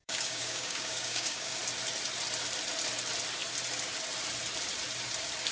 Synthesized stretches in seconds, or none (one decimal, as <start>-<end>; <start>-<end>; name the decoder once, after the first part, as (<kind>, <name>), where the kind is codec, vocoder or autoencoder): 0.0-1.6 (codec, DAC)